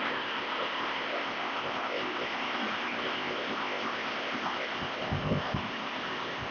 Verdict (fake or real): fake